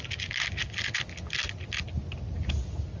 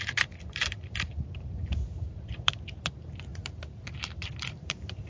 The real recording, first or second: first